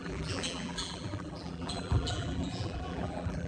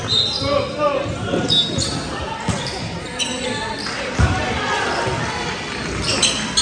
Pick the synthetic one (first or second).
first